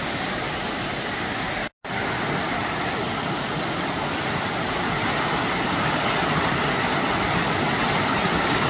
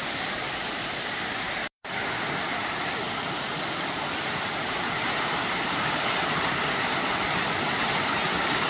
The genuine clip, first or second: first